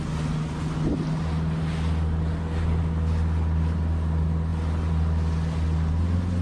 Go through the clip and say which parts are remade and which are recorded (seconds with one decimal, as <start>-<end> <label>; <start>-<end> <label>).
0.0-6.4 recorded